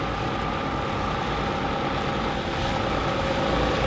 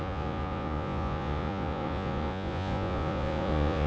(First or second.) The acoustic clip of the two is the first